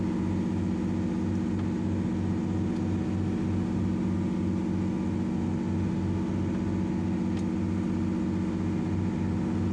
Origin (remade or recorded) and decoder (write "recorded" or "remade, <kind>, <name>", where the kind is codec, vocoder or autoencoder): recorded